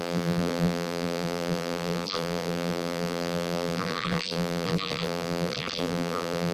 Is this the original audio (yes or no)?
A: no